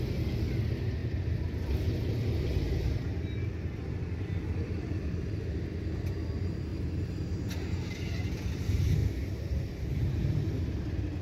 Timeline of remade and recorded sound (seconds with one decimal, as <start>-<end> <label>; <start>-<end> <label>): 0.0-1.0 recorded; 1.0-3.0 remade; 3.0-6.7 recorded; 6.7-7.9 remade; 7.9-9.0 recorded; 9.0-10.7 remade; 10.7-11.2 recorded

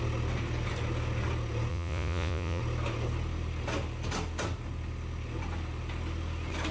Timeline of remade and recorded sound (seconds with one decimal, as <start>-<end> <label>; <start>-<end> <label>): 0.0-1.7 recorded; 1.7-2.6 remade; 2.6-6.7 recorded

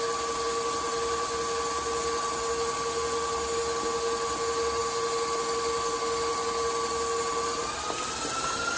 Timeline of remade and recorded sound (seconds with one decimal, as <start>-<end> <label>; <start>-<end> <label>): 0.0-8.8 recorded

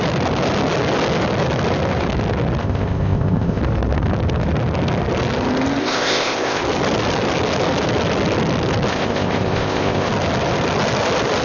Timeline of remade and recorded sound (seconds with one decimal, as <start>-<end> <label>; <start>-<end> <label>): 0.0-2.6 recorded; 2.6-3.6 remade; 3.6-5.8 recorded; 5.8-6.6 remade; 6.6-8.9 recorded; 8.9-10.1 remade; 10.1-11.4 recorded